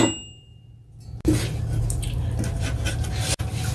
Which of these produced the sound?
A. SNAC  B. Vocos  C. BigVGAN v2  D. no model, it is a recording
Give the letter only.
D